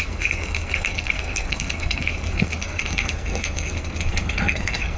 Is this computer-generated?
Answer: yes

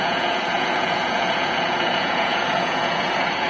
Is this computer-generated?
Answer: yes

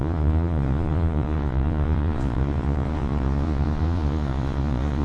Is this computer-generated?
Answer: yes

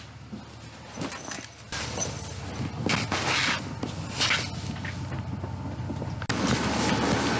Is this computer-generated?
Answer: no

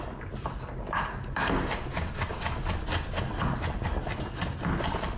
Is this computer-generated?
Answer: no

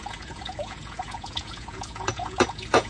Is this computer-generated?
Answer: yes